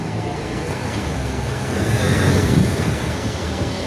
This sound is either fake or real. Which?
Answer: fake